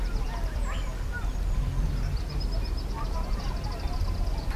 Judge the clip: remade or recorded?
recorded